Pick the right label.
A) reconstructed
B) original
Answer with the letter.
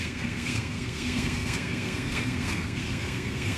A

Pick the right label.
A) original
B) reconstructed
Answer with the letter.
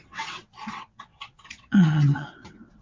B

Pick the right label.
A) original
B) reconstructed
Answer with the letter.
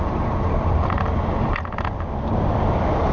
A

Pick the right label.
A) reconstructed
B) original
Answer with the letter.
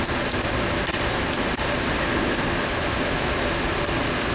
B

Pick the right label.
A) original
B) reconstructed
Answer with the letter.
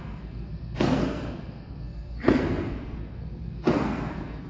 B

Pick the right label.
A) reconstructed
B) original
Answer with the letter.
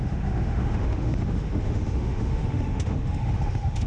A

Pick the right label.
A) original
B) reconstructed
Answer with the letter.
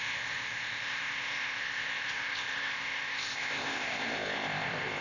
B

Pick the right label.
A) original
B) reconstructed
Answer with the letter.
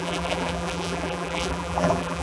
B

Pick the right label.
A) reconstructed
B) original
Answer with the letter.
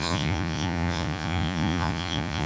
A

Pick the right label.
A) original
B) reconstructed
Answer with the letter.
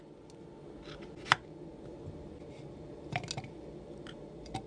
A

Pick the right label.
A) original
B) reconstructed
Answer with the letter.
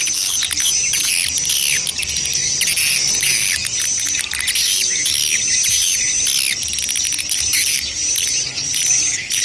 A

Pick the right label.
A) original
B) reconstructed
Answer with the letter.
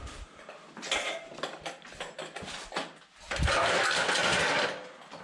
A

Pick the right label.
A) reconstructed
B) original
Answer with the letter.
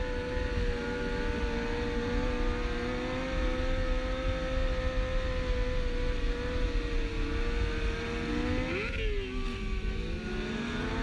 B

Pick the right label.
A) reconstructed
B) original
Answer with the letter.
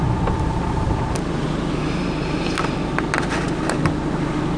B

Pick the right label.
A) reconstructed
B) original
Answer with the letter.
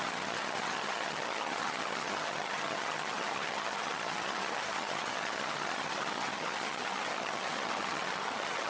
A